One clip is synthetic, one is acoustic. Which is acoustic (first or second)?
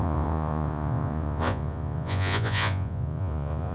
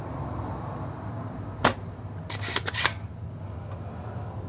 second